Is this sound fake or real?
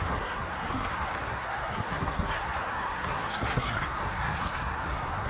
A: fake